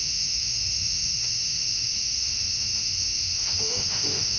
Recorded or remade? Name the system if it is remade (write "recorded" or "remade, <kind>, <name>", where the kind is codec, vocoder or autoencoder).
remade, autoencoder, DAC-VAE